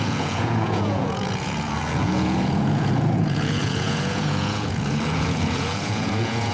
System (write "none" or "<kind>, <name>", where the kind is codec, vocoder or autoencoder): vocoder, Vocos